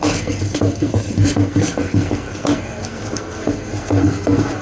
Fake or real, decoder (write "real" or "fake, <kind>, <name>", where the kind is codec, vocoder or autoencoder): fake, codec, SNAC